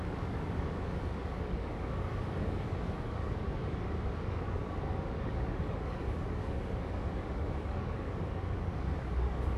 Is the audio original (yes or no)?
no